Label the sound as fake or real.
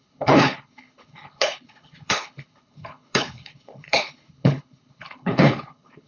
fake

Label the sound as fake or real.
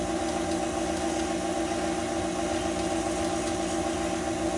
real